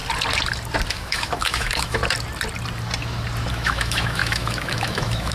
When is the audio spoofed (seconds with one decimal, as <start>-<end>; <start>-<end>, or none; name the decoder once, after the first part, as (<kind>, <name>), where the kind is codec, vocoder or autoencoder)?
0.9-2.0 (autoencoder, DAC-VAE); 3.5-5.3